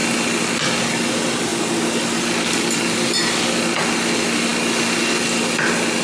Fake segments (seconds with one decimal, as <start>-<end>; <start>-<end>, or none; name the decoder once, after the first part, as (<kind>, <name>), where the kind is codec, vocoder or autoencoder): none